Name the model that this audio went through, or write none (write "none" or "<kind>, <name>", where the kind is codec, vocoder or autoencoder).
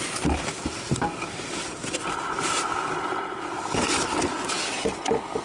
none